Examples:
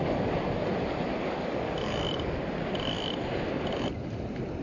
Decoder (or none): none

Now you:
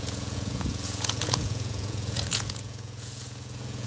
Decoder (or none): vocoder, Vocos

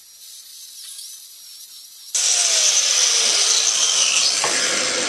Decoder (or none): none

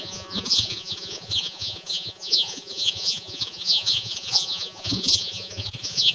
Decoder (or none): vocoder, Vocos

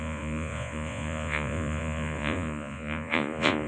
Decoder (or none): vocoder, Vocos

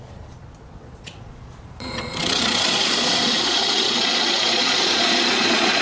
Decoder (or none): vocoder, Vocos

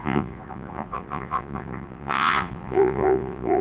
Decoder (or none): vocoder, Vocos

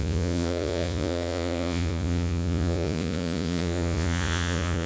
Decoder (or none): vocoder, Vocos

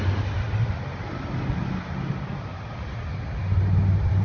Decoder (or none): none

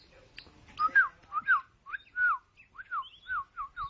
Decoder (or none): none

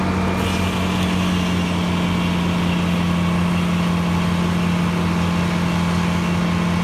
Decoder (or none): none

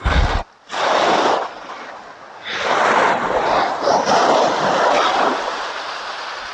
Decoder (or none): none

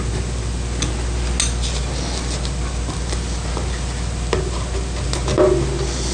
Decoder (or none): none